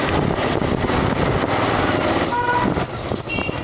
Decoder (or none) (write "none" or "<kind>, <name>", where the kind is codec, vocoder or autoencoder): none